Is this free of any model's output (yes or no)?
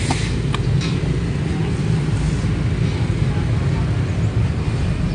yes